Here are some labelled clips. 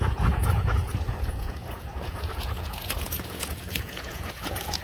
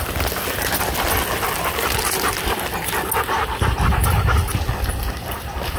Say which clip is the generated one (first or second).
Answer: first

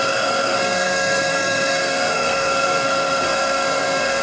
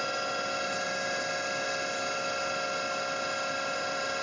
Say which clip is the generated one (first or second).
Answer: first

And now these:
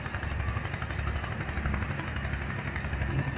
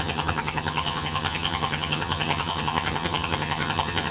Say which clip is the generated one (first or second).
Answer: second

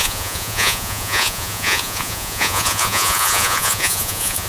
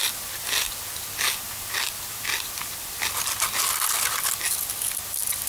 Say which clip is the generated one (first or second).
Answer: first